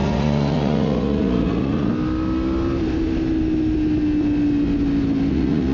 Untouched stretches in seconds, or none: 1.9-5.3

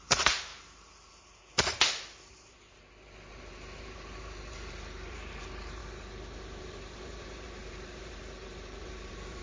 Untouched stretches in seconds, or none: 0.5-2.3; 2.8-3.3; 5.8-6.6

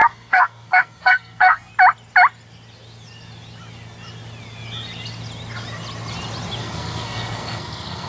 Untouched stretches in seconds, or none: 1.7-6.6

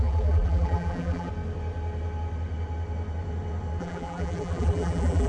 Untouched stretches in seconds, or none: 1.3-3.8